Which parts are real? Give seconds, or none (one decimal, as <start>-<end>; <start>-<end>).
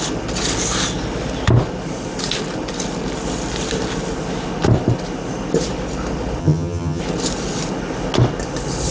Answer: 0.0-6.4; 7.0-8.9